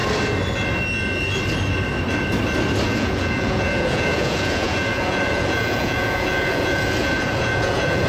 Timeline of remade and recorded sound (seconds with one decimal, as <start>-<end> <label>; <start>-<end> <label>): 0.0-2.9 recorded; 2.9-8.1 remade